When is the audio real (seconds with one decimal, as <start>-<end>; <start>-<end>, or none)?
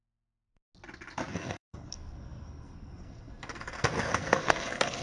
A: 0.6-1.3